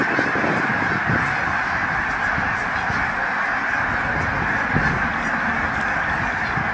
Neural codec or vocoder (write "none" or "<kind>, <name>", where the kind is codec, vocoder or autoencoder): none